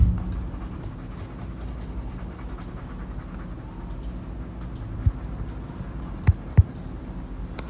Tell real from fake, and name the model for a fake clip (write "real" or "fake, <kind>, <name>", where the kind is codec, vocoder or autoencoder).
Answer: real